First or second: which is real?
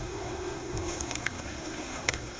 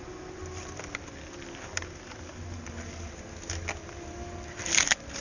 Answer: second